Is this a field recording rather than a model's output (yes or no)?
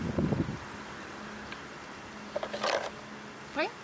yes